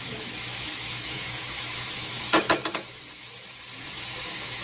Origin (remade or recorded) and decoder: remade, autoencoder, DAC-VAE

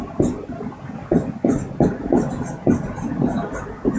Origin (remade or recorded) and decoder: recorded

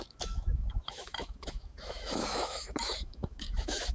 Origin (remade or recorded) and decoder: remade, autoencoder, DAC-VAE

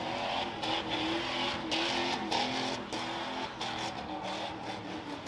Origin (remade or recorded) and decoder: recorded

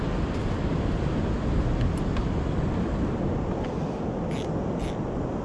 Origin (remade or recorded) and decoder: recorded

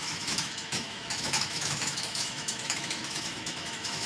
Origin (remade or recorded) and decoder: remade, autoencoder, DAC-VAE